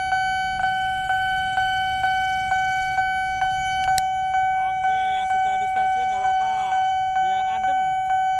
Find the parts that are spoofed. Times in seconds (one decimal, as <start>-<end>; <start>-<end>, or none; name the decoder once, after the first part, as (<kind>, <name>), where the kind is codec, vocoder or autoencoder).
0.6-3.0 (autoencoder, DAC-VAE); 4.8-6.9